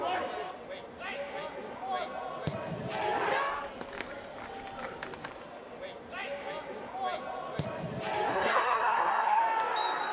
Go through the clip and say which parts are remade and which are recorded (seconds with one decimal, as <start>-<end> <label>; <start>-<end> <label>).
0.0-8.3 recorded; 8.3-9.4 remade; 9.4-10.1 recorded